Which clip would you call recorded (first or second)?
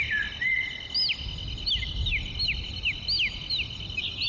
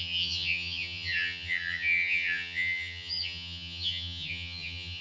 first